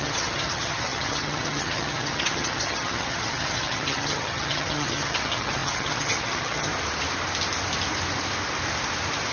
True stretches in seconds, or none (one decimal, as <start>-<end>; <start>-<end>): 6.7-9.3